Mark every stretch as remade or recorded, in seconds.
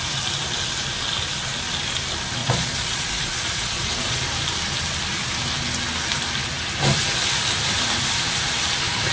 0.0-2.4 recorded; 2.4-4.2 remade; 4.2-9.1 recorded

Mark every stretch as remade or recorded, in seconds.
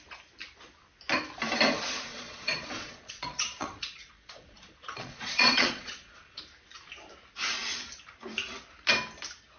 0.0-2.1 recorded; 2.1-6.4 remade; 6.4-9.6 recorded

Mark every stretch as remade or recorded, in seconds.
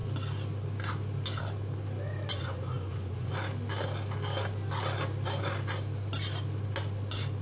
0.0-2.3 recorded; 2.3-3.3 remade; 3.3-7.4 recorded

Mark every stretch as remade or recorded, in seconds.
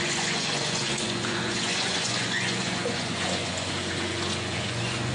0.0-5.1 remade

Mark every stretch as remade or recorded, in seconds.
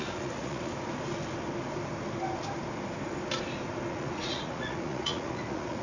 0.0-0.7 remade; 0.7-3.9 recorded; 3.9-5.8 remade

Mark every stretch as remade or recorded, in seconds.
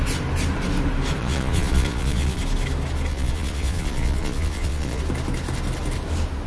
0.0-1.2 recorded; 1.2-2.4 remade; 2.4-3.1 recorded; 3.1-5.0 remade; 5.0-6.5 recorded